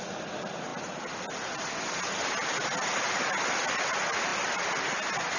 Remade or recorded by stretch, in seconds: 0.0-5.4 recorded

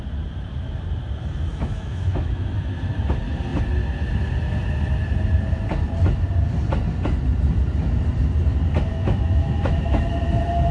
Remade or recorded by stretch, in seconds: 0.0-1.5 recorded; 1.5-2.7 remade; 2.7-8.9 recorded; 8.9-10.1 remade; 10.1-10.7 recorded

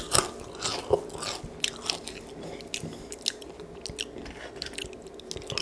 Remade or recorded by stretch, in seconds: 0.0-5.6 recorded